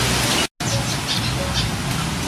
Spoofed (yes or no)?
no